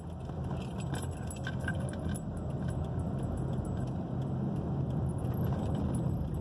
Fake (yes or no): no